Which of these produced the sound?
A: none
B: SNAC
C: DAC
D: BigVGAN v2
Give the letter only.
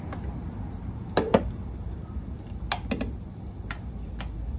A